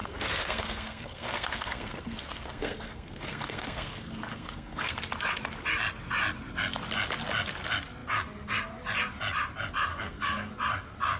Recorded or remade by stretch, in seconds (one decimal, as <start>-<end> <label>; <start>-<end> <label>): 0.0-5.0 remade; 5.0-9.9 recorded; 9.9-10.5 remade; 10.5-11.2 recorded